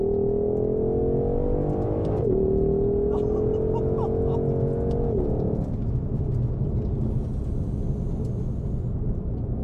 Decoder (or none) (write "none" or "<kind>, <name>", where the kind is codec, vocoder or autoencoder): none